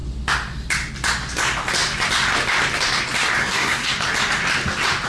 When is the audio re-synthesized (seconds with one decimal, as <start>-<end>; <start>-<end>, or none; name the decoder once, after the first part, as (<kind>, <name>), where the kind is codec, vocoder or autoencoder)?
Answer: 3.4-3.9 (codec, SNAC)